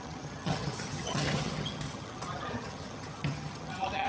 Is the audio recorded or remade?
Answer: remade